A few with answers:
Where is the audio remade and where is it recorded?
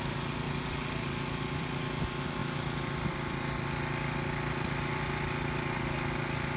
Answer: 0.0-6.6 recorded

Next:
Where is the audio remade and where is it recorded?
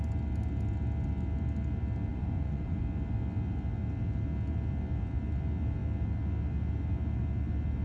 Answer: 0.0-2.1 recorded; 2.1-2.8 remade; 2.8-7.8 recorded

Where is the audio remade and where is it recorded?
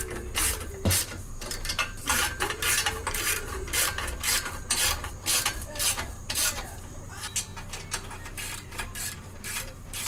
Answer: 0.0-7.5 remade; 7.5-8.3 recorded; 8.3-10.1 remade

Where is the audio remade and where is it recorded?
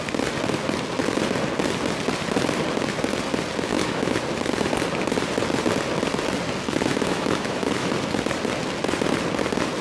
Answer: 0.0-3.7 recorded; 3.7-4.2 remade; 4.2-6.9 recorded; 6.9-7.9 remade; 7.9-9.8 recorded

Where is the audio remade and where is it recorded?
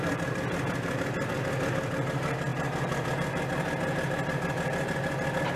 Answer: 0.0-0.7 remade; 0.7-1.7 recorded; 1.7-5.6 remade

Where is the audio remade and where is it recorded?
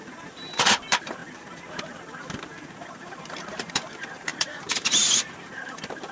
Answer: 0.0-6.1 remade